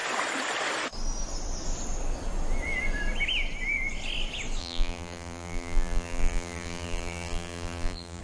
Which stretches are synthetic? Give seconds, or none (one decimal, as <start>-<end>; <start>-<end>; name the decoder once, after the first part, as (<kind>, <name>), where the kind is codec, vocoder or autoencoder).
4.6-8.2 (vocoder, BigVGAN v2)